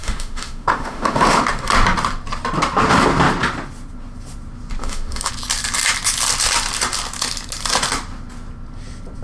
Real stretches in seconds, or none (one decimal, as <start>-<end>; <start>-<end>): 1.4-4.8; 5.3-9.2